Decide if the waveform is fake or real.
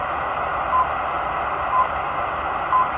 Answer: real